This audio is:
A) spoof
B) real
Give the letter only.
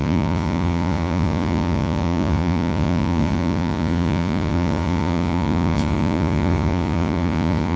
A